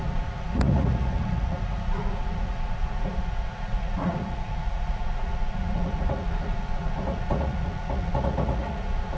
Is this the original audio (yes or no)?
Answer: no